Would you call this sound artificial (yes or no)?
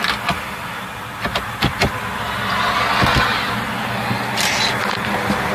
no